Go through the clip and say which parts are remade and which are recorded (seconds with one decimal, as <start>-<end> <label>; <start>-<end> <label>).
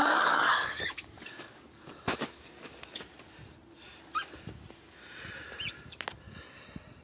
0.0-3.0 remade; 3.0-7.0 recorded